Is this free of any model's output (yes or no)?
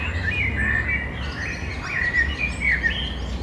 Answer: yes